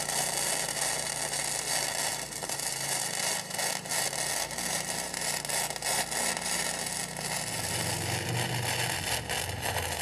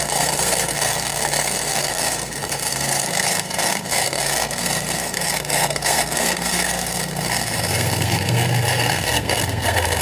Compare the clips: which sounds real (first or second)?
first